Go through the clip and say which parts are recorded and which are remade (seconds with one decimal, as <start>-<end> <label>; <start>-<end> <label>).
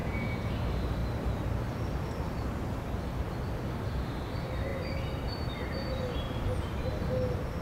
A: 0.0-0.5 remade; 0.5-7.6 recorded